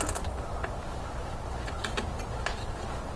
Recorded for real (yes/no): yes